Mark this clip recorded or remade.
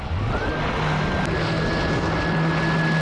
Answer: recorded